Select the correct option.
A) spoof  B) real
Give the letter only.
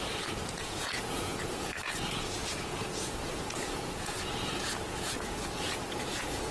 A